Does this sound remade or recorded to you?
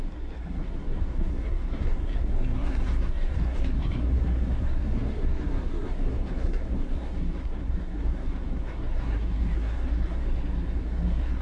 remade